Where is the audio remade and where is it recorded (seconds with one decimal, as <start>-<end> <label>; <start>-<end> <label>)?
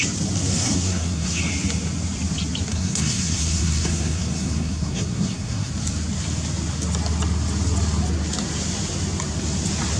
0.0-0.5 recorded; 0.5-1.4 remade; 1.4-2.7 recorded; 2.7-5.7 remade; 5.7-10.0 recorded